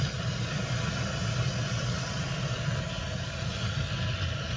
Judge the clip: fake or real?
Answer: real